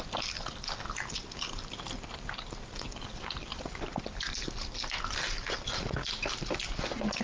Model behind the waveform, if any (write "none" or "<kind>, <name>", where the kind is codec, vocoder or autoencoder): none